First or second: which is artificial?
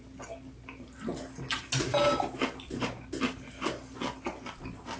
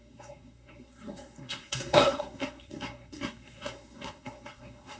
second